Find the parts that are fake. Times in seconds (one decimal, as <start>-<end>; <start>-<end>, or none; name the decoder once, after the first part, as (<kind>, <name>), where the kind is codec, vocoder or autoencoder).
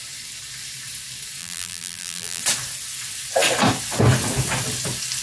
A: 1.4-2.4 (vocoder, BigVGAN v2)